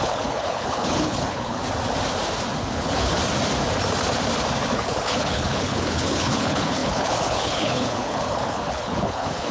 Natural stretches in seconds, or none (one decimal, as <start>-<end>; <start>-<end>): 1.6-2.7; 3.2-4.7